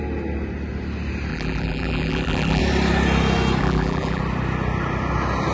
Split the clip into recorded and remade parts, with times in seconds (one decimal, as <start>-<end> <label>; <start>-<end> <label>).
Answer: 0.0-1.3 recorded; 1.3-2.6 remade; 2.6-3.6 recorded; 3.6-4.2 remade; 4.2-5.5 recorded